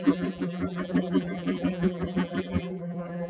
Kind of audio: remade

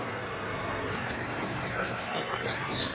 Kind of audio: remade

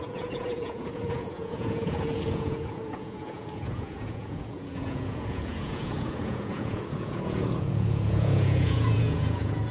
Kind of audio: remade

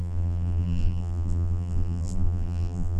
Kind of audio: remade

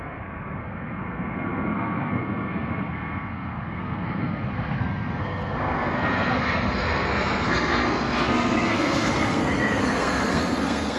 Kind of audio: remade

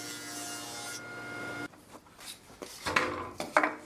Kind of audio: recorded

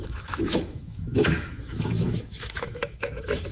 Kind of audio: remade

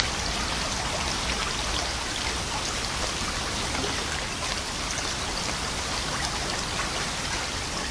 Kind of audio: recorded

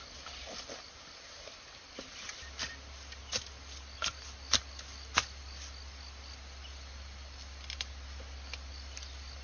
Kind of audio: recorded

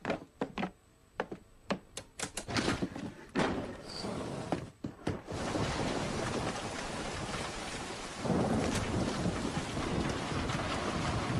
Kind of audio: remade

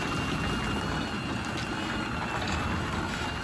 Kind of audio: recorded